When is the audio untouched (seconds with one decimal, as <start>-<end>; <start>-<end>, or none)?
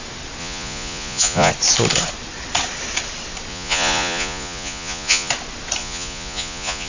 0.0-0.4; 1.5-3.5; 5.3-5.8